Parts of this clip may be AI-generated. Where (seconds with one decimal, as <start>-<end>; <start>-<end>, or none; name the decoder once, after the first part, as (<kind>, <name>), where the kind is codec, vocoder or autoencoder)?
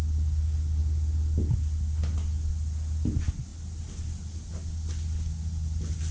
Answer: none